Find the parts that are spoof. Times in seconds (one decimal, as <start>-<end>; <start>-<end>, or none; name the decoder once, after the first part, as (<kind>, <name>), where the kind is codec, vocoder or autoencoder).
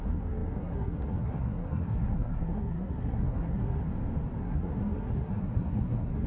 0.0-3.9 (codec, SNAC); 4.4-6.3